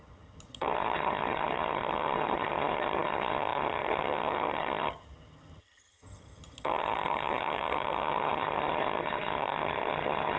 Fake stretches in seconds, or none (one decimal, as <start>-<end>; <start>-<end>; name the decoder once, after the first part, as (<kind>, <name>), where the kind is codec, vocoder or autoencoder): 0.0-10.4 (vocoder, HiFi-GAN)